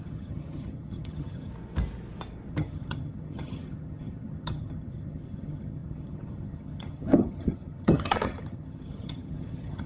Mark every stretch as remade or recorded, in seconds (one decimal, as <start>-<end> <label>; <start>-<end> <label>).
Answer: 0.0-1.5 remade; 1.5-2.5 recorded; 2.5-9.9 remade